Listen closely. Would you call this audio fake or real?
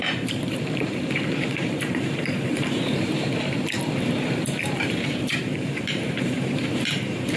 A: fake